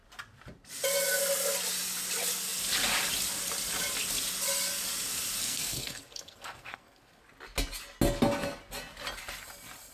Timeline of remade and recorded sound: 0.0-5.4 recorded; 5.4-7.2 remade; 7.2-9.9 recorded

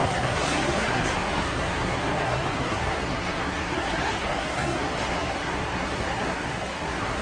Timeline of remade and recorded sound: 0.0-7.2 remade

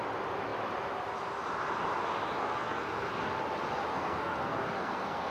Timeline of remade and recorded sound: 0.0-2.4 recorded; 2.4-3.1 remade; 3.1-3.9 recorded; 3.9-5.3 remade

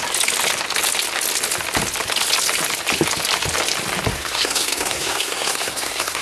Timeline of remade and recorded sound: 0.0-4.1 recorded; 4.1-6.2 remade

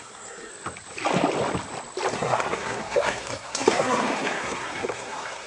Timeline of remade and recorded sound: 0.0-0.5 remade; 0.5-2.1 recorded; 2.1-5.5 remade

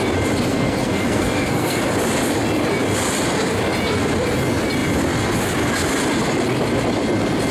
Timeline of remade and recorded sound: 0.0-0.5 recorded; 0.5-1.8 remade; 1.8-7.5 recorded

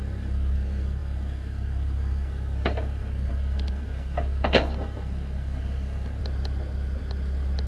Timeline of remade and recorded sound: 0.0-6.2 remade; 6.2-7.7 recorded

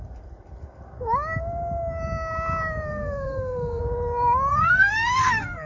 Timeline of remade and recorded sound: 0.0-2.9 recorded; 2.9-3.8 remade; 3.8-4.5 recorded; 4.5-5.7 remade